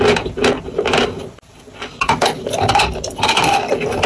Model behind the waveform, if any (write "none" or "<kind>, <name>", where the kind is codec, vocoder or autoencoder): none